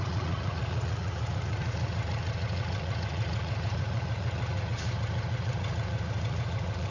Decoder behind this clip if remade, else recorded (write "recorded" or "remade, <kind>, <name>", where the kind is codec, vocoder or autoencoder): remade, vocoder, Vocos